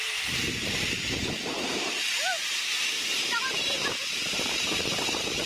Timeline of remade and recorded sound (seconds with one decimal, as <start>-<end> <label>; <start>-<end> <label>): 0.0-5.5 remade